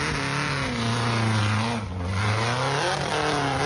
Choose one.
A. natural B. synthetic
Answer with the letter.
A